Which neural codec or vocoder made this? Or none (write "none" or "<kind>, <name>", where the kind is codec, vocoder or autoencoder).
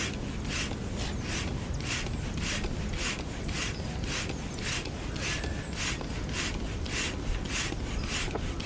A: none